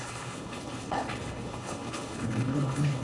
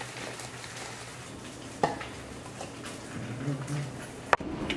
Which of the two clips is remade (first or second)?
first